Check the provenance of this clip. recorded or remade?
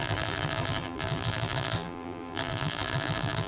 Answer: remade